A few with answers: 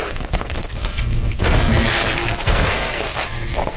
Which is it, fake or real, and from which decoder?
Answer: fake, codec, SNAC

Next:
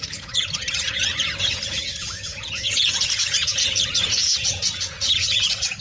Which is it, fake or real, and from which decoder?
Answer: fake, vocoder, Vocos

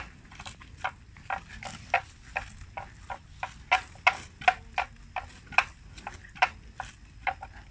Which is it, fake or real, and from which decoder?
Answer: real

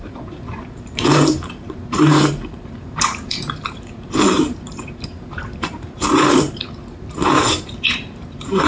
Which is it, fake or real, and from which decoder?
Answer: fake, vocoder, BigVGAN v2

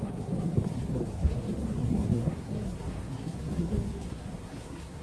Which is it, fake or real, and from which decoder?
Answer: fake, codec, SNAC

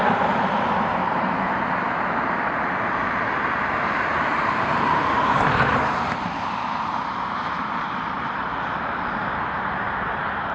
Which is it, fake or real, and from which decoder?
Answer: fake, vocoder, BigVGAN v2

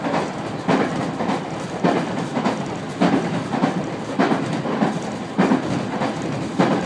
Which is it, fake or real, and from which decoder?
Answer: real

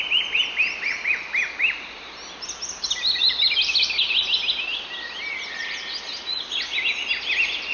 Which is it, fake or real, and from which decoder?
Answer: real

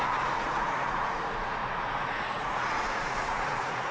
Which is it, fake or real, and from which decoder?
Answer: fake, vocoder, Vocos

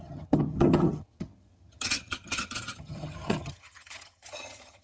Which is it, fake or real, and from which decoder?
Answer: fake, vocoder, HiFi-GAN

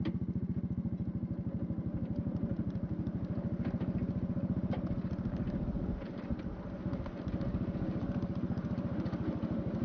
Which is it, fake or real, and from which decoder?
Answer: real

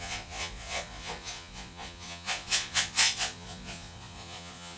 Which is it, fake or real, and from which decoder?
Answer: fake, vocoder, Vocos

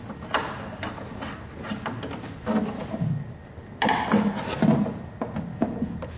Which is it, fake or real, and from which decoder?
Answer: real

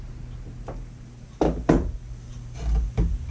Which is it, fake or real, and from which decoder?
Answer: real